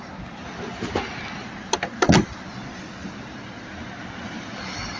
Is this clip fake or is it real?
real